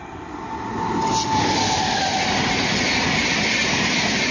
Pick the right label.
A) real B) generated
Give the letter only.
A